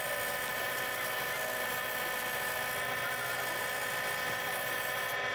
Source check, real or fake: real